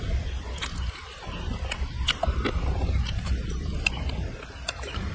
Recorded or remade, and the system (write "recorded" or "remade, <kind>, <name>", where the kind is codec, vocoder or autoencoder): recorded